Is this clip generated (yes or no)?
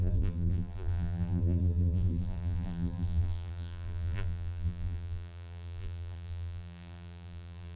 yes